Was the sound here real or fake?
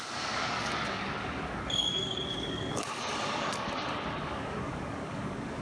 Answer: fake